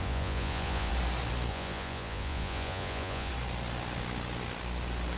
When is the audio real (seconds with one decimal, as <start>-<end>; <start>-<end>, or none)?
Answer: 0.9-1.5; 3.3-5.2

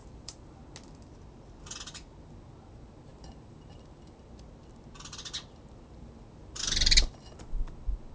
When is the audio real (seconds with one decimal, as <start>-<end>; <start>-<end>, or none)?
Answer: 0.6-8.1

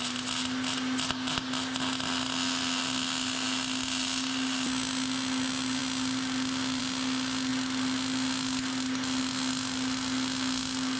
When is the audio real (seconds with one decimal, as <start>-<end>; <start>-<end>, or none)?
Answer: 0.0-11.0

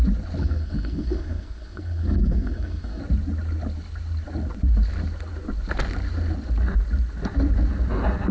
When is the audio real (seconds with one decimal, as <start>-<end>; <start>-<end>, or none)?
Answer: 0.0-0.4; 3.0-8.3

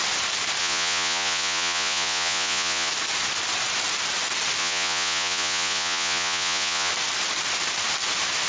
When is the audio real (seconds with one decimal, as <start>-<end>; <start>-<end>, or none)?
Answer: 0.0-0.6; 2.9-4.6; 6.9-8.5

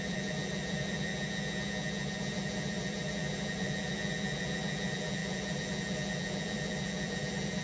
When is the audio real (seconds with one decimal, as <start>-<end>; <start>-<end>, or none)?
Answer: 1.1-2.3